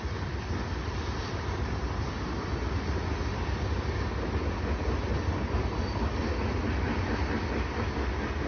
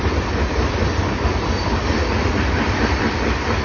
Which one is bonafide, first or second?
first